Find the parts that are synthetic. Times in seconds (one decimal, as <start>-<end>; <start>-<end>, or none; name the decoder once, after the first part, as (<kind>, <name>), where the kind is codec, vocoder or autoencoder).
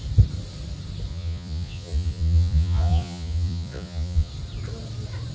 1.1-4.3 (vocoder, Vocos)